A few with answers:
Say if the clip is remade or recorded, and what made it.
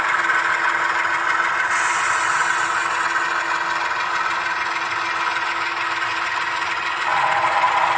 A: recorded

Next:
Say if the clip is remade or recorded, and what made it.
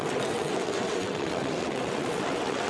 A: remade, vocoder, WaveNeXt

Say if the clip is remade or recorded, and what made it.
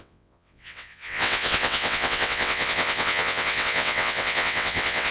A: remade, vocoder, WaveNeXt